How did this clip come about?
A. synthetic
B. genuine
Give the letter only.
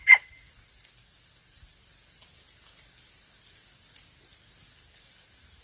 B